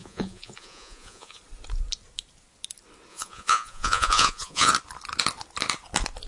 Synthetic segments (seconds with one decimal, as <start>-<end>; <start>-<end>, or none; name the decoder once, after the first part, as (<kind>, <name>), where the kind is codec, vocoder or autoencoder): 0.0-1.4 (vocoder, Vocos); 3.1-4.7